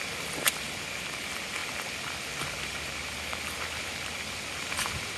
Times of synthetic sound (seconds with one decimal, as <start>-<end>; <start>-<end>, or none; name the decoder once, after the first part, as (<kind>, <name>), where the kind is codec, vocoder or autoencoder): none